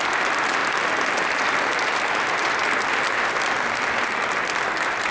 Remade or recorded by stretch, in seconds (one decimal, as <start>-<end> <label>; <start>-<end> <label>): 0.0-5.1 recorded